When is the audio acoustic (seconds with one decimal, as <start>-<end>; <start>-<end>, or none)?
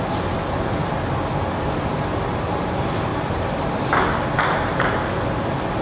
0.0-3.1; 3.8-5.8